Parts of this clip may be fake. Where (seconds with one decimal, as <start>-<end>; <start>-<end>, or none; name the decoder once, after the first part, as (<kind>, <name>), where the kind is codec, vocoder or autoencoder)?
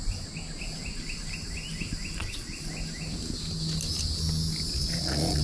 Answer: 2.2-2.7 (vocoder, Vocos); 4.7-5.4